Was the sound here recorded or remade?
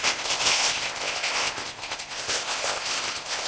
remade